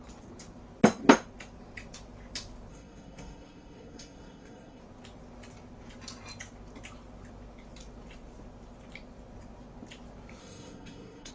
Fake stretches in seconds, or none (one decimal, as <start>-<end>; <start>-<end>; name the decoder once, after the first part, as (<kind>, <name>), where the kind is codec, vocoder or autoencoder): 2.7-4.8 (codec, SNAC); 10.4-11.3